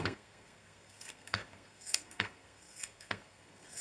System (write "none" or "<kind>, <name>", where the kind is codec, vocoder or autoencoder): codec, SNAC